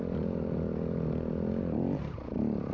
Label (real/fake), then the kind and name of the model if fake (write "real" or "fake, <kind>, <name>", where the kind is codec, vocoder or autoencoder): real